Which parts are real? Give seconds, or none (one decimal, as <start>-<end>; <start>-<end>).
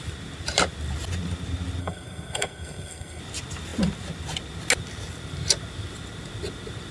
0.0-1.8; 3.2-6.9